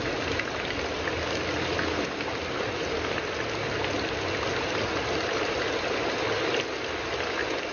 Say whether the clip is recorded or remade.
recorded